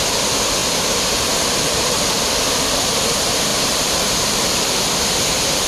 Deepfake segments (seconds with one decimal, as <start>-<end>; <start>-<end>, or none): 0.6-2.3; 3.5-4.4